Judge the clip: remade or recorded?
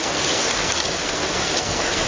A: remade